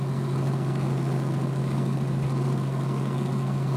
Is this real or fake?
fake